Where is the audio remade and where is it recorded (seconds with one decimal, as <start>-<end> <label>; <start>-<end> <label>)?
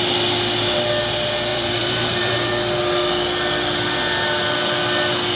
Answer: 0.0-1.5 recorded; 1.5-2.5 remade; 2.5-5.4 recorded